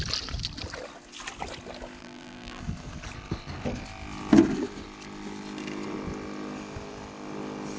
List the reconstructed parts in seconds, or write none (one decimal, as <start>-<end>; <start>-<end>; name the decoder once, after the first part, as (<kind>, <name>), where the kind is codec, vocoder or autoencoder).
2.0-2.6 (vocoder, BigVGAN v2)